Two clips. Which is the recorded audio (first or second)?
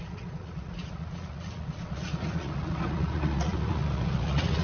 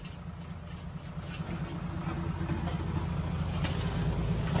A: second